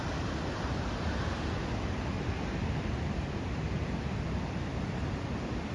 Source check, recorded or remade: recorded